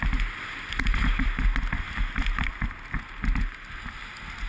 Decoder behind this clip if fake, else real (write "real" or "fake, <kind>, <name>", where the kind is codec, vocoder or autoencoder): real